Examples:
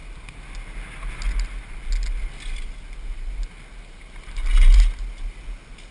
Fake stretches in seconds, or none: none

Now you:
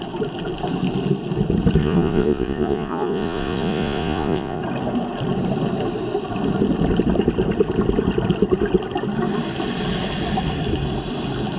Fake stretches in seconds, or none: 1.8-4.6 (vocoder, Vocos)